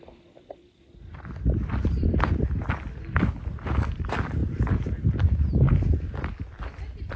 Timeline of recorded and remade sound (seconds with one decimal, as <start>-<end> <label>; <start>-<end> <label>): 0.0-7.2 recorded